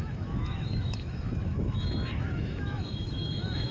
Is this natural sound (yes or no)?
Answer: no